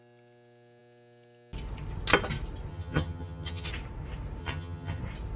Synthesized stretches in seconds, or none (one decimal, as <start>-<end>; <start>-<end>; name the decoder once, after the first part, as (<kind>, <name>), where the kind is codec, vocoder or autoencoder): 2.7-3.7 (vocoder, HiFi-GAN); 4.4-5.0